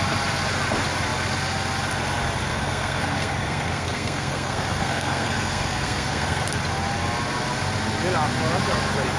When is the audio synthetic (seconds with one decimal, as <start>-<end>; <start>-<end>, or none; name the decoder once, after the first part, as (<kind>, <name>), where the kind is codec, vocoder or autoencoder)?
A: 2.5-6.5 (codec, SNAC)